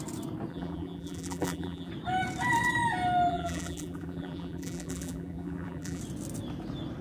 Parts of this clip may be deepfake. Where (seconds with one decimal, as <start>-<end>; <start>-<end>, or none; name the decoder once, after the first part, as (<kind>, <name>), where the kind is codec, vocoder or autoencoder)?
0.5-1.9 (vocoder, BigVGAN v2); 3.3-6.0